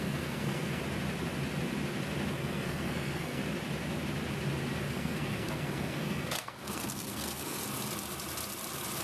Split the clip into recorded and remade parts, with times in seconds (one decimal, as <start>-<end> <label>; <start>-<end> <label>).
0.0-0.8 remade; 0.8-2.3 recorded; 2.3-3.4 remade; 3.4-4.8 recorded; 4.8-7.6 remade; 7.6-9.0 recorded